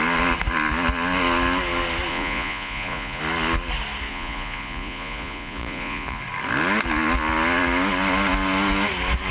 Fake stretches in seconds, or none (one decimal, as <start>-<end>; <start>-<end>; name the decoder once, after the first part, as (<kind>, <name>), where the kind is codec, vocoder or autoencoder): 2.1-3.2 (vocoder, Vocos); 4.1-6.2